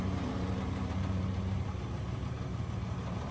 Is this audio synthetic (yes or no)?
yes